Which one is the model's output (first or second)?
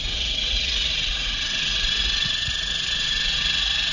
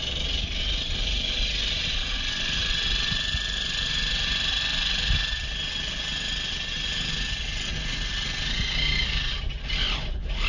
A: first